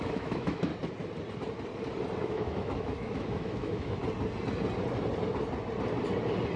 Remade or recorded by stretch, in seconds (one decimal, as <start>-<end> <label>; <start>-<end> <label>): 0.0-0.7 remade; 0.7-2.2 recorded; 2.2-4.0 remade; 4.0-6.6 recorded